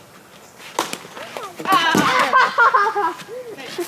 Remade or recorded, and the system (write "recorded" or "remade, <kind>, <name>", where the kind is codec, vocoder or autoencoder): recorded